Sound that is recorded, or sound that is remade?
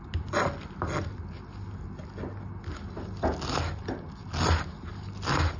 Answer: recorded